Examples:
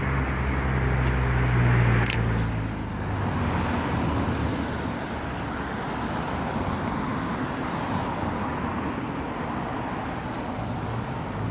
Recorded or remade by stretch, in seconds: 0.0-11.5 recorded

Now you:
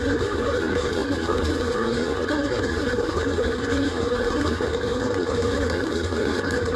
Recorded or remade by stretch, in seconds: 0.0-6.8 remade

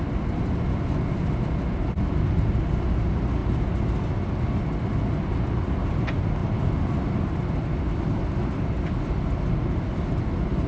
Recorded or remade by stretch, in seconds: 0.0-10.7 recorded

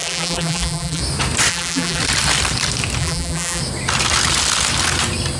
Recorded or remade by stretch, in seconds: 0.0-1.0 remade; 1.0-1.5 recorded; 1.5-2.0 remade; 2.0-3.0 recorded; 3.0-3.6 remade; 3.6-5.4 recorded

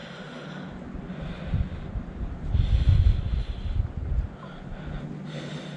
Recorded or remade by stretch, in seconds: 0.0-2.9 recorded; 2.9-4.0 remade; 4.0-5.8 recorded